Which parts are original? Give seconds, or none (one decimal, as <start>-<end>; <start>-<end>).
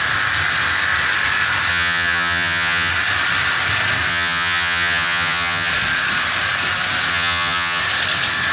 0.0-1.7; 2.9-4.1; 5.7-7.1; 7.8-8.5